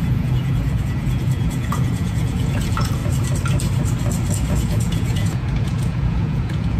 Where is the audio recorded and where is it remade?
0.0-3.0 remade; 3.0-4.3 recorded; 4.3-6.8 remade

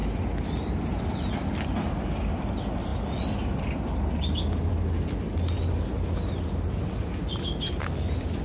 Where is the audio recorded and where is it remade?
0.0-8.4 recorded

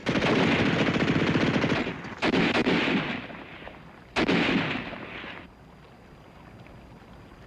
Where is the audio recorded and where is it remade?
0.0-7.5 recorded

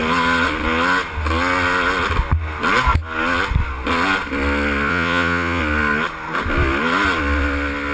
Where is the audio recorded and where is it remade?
0.0-4.9 recorded; 4.9-5.6 remade; 5.6-7.9 recorded

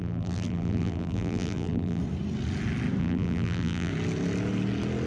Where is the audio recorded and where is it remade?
0.0-2.0 remade; 2.0-3.0 recorded; 3.0-3.9 remade; 3.9-5.1 recorded

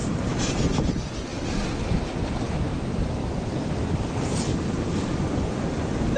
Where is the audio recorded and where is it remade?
0.0-0.8 remade; 0.8-4.5 recorded; 4.5-5.4 remade; 5.4-6.2 recorded

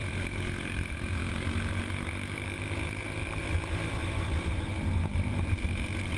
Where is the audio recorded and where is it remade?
0.0-6.2 recorded